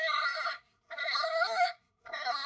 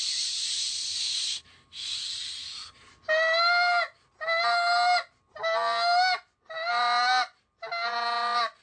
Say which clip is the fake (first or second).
first